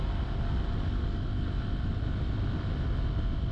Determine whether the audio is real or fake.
real